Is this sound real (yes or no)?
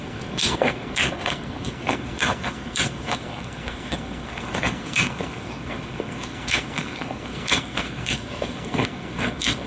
no